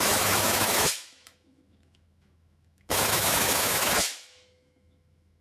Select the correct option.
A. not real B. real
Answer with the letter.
A